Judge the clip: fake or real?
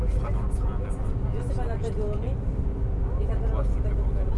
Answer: real